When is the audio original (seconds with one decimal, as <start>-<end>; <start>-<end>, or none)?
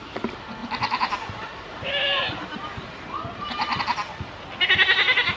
0.0-0.6; 3.8-5.4